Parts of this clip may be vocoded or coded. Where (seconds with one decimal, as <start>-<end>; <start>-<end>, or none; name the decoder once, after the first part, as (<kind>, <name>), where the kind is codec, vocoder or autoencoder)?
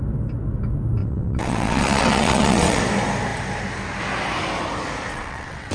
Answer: 1.0-2.8 (vocoder, WaveNeXt); 5.1-5.7